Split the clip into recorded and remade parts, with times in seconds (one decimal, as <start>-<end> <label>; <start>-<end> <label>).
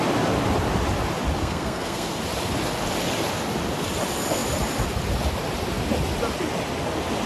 0.0-1.4 recorded; 1.4-2.2 remade; 2.2-7.3 recorded